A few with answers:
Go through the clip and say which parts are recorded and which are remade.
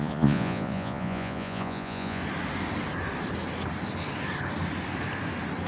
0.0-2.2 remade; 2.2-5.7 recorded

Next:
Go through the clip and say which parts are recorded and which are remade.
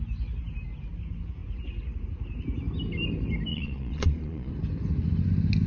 0.0-3.5 recorded; 3.5-4.5 remade; 4.5-5.7 recorded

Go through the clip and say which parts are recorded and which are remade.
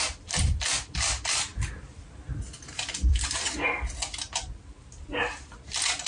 0.0-6.1 recorded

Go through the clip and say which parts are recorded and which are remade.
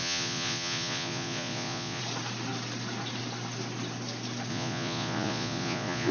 0.0-2.0 remade; 2.0-4.5 recorded; 4.5-6.1 remade